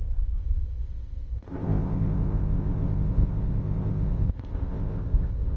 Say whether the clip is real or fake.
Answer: fake